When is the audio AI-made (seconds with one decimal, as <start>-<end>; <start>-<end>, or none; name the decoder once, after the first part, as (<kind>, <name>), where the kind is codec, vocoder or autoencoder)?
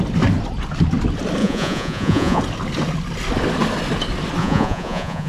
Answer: 1.4-2.4 (vocoder, Vocos); 4.4-5.3